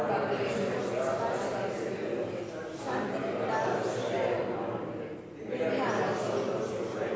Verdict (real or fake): real